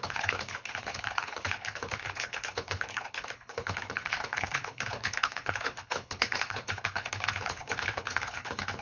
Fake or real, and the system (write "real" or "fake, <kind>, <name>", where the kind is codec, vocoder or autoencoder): fake, codec, HILCodec